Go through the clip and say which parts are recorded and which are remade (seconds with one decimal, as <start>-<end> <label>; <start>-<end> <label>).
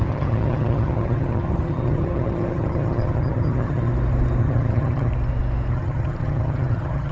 0.0-3.9 remade; 3.9-4.4 recorded; 4.4-5.1 remade; 5.1-5.7 recorded; 5.7-7.1 remade